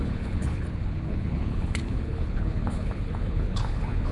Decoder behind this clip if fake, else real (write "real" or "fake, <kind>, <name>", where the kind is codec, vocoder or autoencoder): fake, codec, HILCodec